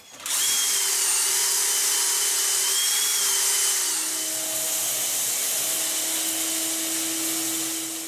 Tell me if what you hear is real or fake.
real